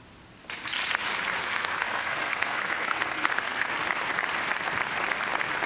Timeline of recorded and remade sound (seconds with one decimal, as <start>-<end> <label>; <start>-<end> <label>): 0.0-1.4 recorded; 1.4-3.7 remade; 3.7-5.7 recorded